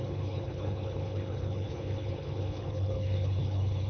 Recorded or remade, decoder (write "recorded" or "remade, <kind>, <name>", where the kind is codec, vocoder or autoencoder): remade, codec, HILCodec